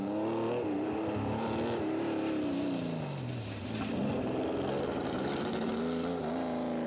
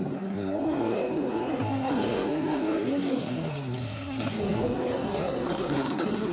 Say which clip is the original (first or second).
first